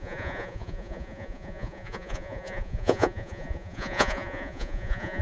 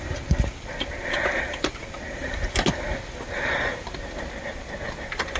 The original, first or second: second